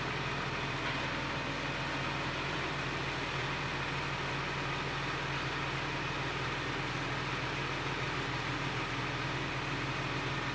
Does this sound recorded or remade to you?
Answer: recorded